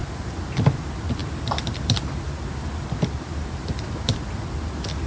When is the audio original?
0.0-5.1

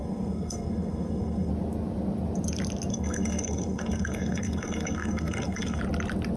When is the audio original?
1.5-2.9; 5.8-6.4

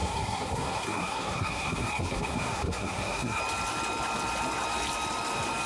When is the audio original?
3.4-5.7

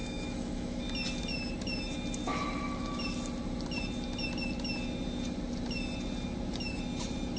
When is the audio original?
0.8-2.3; 3.0-7.4

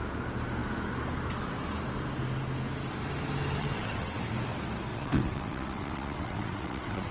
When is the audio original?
0.0-3.6; 4.2-4.9

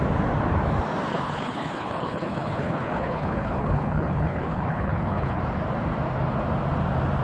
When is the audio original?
0.0-1.1; 5.4-7.2

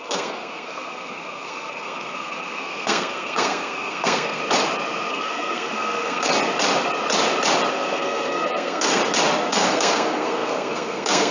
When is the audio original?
4.4-5.1; 6.3-7.7; 9.0-9.5